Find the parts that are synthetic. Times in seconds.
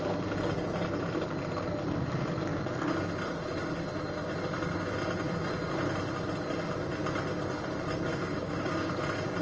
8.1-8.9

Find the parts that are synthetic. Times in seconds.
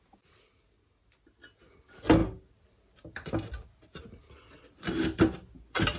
none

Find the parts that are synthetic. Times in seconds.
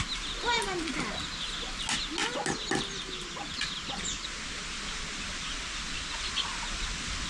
none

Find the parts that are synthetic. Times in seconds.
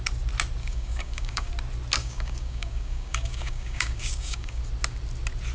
0.6-1.5; 2.0-4.6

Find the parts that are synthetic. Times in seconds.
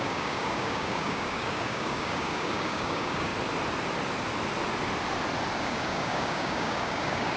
0.0-3.3; 5.6-7.4